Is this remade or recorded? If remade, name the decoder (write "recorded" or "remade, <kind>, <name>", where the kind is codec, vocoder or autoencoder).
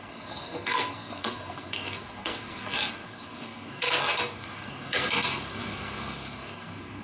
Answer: remade, codec, SNAC